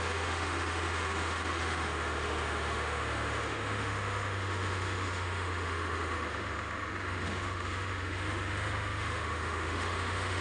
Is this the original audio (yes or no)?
no